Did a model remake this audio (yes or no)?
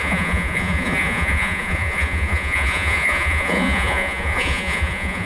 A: yes